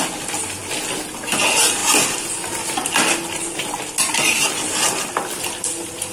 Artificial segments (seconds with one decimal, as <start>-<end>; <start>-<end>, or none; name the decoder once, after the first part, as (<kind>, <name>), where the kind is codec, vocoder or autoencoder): none